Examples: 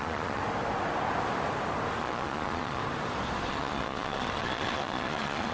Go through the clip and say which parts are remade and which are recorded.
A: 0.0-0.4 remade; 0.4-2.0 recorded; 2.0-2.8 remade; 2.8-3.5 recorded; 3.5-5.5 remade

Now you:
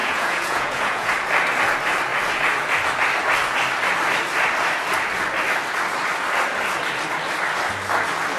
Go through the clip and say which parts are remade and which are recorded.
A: 0.0-1.1 remade; 1.1-8.4 recorded